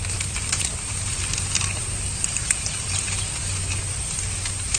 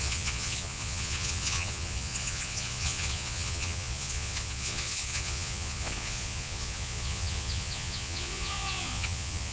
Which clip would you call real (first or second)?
first